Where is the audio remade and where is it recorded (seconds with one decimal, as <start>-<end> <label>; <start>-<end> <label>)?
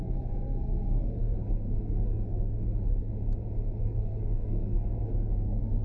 0.0-3.1 remade; 3.1-3.8 recorded; 3.8-5.8 remade